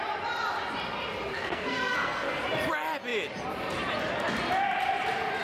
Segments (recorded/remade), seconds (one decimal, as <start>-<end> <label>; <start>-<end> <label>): 0.0-1.3 recorded; 1.3-2.4 remade; 2.4-5.4 recorded